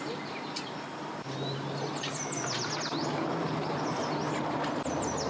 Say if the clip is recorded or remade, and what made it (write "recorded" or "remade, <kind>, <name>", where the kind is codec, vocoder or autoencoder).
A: recorded